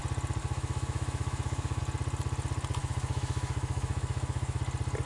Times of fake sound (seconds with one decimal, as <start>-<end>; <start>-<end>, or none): 0.4-1.8; 2.8-4.6